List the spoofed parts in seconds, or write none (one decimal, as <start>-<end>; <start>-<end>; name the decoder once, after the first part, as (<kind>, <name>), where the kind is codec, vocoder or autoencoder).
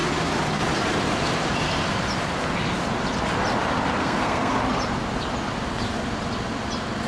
4.0-4.5 (codec, SNAC)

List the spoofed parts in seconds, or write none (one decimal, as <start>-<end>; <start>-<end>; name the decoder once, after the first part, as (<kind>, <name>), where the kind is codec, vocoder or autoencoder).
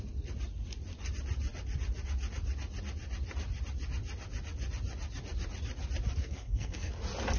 6.2-6.9 (codec, SNAC)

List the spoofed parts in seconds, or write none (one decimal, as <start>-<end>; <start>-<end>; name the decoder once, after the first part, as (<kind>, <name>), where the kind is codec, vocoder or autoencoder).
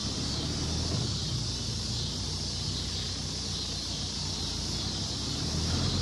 none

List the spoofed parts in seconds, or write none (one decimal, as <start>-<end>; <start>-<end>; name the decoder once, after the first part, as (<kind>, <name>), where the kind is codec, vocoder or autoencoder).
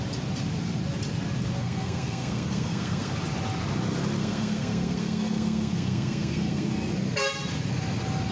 1.6-3.1 (codec, SNAC); 4.2-6.7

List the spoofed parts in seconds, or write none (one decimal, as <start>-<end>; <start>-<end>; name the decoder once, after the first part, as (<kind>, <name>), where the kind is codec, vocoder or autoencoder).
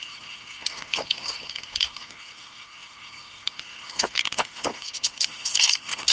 0.0-6.1 (codec, SNAC)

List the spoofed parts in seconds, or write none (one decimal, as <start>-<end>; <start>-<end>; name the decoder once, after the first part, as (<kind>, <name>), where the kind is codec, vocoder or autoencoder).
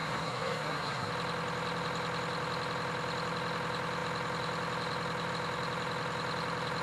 0.0-1.1 (codec, SNAC)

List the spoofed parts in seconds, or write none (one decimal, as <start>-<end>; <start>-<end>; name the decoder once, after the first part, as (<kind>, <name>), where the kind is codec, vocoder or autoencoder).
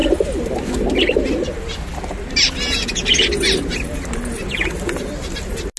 none